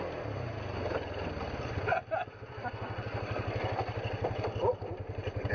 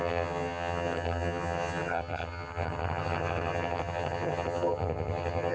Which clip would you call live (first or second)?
first